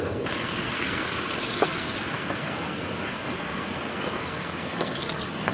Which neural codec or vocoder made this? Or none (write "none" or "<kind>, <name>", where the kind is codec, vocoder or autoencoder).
codec, SNAC